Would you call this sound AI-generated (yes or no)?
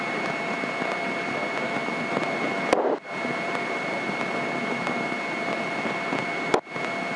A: no